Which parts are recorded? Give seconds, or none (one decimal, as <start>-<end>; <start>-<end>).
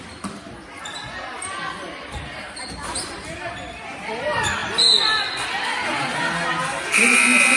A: 0.0-7.6